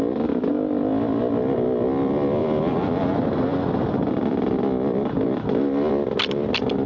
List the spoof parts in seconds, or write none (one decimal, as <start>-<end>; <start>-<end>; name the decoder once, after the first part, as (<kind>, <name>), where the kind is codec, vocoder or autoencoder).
0.5-1.2 (vocoder, BigVGAN v2)